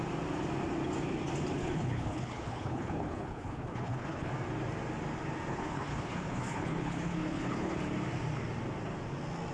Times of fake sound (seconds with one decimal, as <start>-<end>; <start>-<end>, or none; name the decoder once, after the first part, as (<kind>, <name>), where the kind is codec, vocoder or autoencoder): 1.6-4.3 (codec, HILCodec); 5.5-7.8